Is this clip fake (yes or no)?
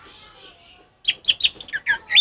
no